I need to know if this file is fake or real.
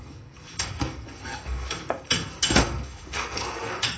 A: fake